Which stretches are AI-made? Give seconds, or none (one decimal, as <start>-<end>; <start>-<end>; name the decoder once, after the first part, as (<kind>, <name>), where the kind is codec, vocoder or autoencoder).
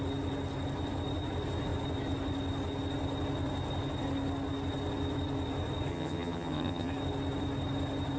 5.9-6.9 (vocoder, HiFi-GAN)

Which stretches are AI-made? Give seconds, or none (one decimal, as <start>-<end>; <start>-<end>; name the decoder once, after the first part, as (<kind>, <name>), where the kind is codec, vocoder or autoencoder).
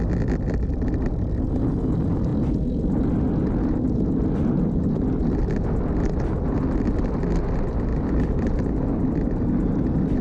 7.9-8.6 (vocoder, BigVGAN v2)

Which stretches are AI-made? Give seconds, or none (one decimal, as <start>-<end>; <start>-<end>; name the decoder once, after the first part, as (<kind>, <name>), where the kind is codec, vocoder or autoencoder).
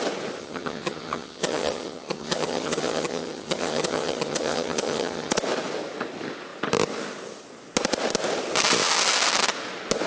0.4-5.3 (vocoder, HiFi-GAN)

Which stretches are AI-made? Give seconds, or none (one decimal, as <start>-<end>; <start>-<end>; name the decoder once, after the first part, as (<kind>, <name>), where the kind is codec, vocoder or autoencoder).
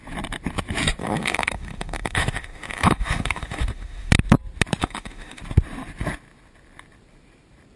1.0-4.1 (autoencoder, DAC-VAE); 4.8-5.4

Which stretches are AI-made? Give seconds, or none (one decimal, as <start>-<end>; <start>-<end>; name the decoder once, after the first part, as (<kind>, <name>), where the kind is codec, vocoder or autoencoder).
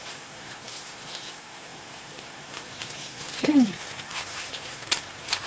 0.0-5.5 (codec, SNAC)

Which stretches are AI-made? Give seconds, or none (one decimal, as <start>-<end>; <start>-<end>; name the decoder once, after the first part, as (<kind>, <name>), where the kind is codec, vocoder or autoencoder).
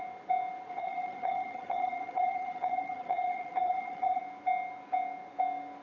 0.7-4.2 (vocoder, HiFi-GAN)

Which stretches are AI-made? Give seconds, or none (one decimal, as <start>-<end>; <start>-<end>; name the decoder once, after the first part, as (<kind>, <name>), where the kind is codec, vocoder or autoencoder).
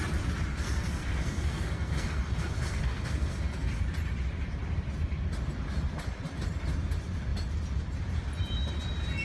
0.5-3.7 (codec, SNAC)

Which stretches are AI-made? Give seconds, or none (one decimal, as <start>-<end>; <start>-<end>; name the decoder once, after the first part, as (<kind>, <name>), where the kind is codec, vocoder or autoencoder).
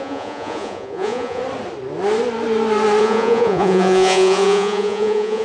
0.0-1.4 (vocoder, Vocos); 3.0-5.4